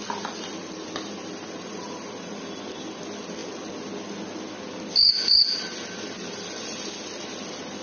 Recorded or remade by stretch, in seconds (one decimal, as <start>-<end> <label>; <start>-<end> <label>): 0.0-7.8 recorded